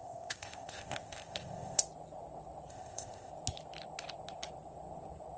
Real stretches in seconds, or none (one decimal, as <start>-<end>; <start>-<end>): 1.8-2.7; 3.3-5.4